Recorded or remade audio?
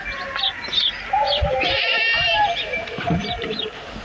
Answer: remade